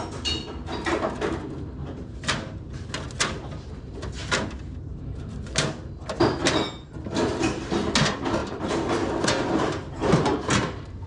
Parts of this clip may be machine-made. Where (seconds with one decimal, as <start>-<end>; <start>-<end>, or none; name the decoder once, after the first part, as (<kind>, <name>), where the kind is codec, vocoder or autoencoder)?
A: 1.8-2.9 (vocoder, BigVGAN v2); 4.2-5.6; 8.4-8.9; 10.0-10.5

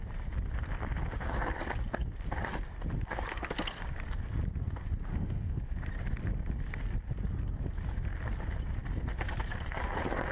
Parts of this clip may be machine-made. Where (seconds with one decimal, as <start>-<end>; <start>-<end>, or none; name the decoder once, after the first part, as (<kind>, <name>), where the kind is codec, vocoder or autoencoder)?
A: 5.1-5.6 (autoencoder, DAC-VAE)

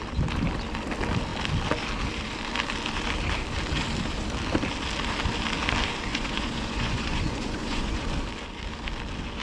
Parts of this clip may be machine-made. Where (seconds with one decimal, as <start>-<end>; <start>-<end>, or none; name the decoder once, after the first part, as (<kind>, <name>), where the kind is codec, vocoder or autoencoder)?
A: 6.1-8.0 (vocoder, Vocos)

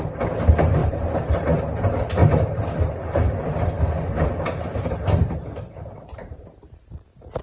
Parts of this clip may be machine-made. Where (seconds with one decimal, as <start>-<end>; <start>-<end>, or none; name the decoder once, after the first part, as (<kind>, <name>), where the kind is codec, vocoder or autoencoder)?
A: 0.8-1.6 (vocoder, BigVGAN v2); 2.2-6.4

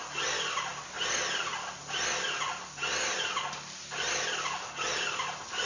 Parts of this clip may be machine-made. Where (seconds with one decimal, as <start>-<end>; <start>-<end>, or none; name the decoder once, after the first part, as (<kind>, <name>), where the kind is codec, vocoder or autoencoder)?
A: none

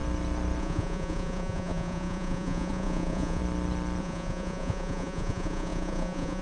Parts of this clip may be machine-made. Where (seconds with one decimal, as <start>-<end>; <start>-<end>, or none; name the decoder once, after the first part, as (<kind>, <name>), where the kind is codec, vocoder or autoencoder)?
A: 0.6-3.4 (vocoder, Vocos); 4.0-6.4